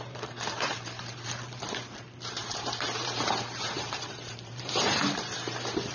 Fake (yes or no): yes